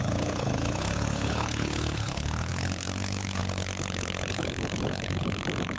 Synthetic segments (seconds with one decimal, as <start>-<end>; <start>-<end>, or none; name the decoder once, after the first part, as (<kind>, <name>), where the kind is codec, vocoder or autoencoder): 0.0-5.8 (codec, HILCodec)